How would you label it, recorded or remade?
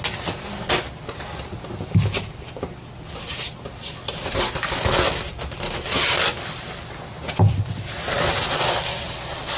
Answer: recorded